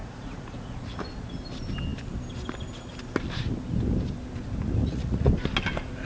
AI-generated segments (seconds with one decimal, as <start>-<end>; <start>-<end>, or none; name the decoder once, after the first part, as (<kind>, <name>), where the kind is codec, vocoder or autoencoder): 0.0-1.0 (vocoder, Vocos); 4.8-5.3

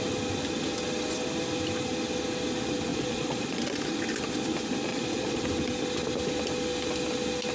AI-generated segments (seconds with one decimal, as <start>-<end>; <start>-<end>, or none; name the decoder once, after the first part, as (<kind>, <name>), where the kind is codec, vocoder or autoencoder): 2.9-3.6 (vocoder, Vocos); 4.9-5.5